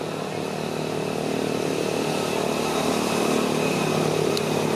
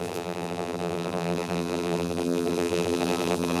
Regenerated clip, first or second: second